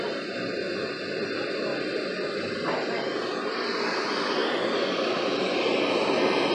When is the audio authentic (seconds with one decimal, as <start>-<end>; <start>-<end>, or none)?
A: 0.0-6.5